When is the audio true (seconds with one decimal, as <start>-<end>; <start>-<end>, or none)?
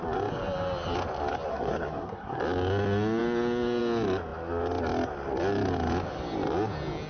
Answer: 0.0-1.5; 2.4-7.1